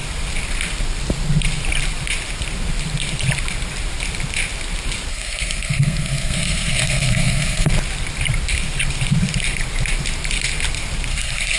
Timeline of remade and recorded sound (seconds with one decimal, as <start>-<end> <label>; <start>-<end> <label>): 0.0-5.1 recorded; 5.1-7.7 remade; 7.7-11.1 recorded; 11.1-11.6 remade